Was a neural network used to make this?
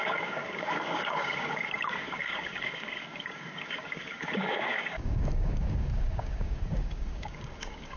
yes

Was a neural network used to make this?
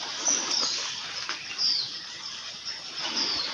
no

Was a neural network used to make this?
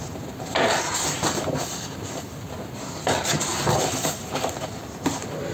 no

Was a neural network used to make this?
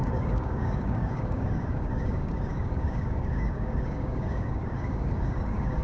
yes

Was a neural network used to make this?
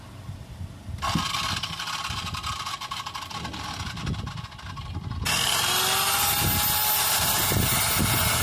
no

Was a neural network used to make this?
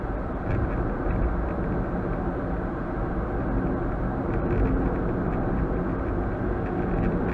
no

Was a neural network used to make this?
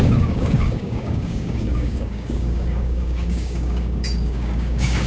yes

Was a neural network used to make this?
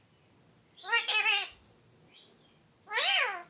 no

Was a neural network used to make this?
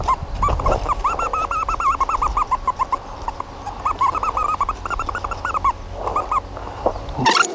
no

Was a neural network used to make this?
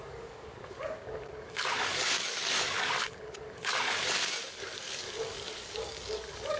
yes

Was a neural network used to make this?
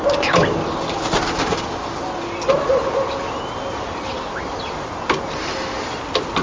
no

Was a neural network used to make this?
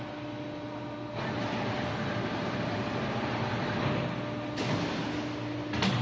no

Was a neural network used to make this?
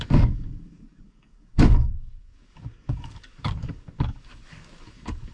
yes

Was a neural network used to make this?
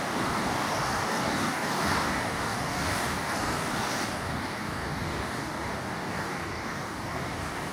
yes